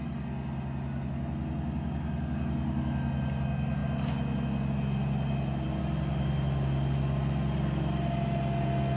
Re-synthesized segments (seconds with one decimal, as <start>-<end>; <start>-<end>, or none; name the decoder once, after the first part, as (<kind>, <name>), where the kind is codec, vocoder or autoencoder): none